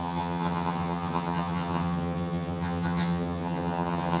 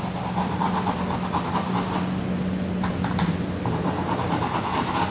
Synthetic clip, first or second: first